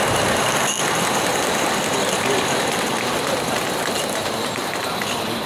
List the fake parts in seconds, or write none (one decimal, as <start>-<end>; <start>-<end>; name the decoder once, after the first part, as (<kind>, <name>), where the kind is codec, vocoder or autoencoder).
none